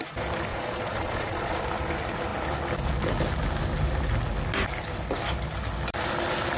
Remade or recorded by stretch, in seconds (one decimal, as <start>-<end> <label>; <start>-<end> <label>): 0.0-0.5 recorded; 0.5-1.6 remade; 1.6-6.6 recorded